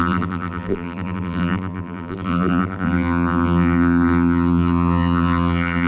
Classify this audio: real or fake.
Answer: fake